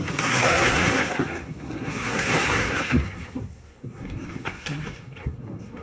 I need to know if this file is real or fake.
fake